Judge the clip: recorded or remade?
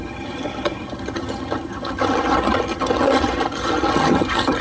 remade